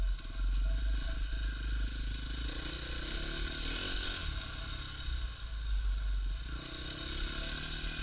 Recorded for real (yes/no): yes